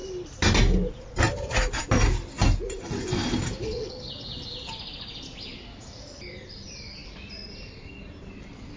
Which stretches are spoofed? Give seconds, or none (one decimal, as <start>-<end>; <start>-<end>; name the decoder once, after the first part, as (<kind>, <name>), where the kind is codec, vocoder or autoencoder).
3.6-4.1 (codec, HILCodec)